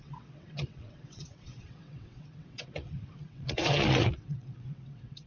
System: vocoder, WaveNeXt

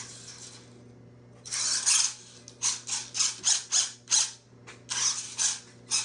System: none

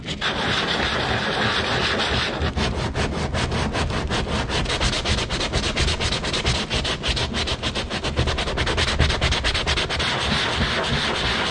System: none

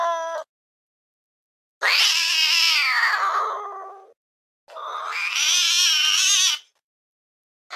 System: none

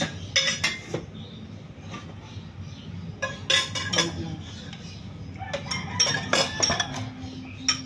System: none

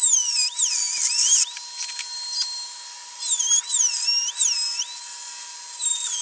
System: none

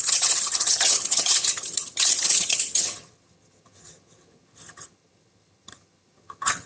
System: vocoder, HiFi-GAN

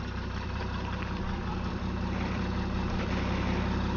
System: vocoder, BigVGAN v2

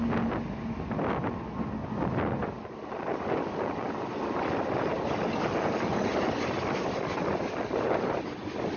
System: none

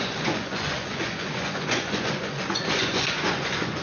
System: vocoder, Vocos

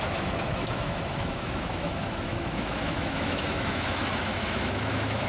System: autoencoder, DAC-VAE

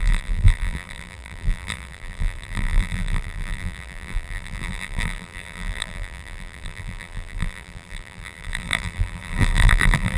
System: vocoder, BigVGAN v2